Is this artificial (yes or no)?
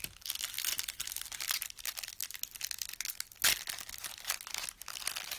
no